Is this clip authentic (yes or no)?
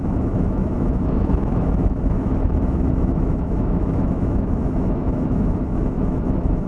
no